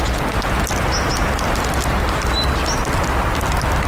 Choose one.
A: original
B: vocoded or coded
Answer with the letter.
A